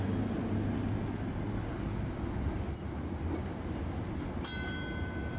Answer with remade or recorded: recorded